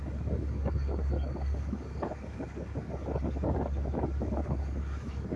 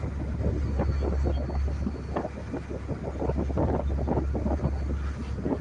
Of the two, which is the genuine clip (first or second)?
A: second